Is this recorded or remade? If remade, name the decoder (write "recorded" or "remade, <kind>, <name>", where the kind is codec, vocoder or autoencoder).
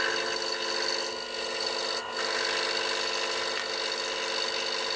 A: recorded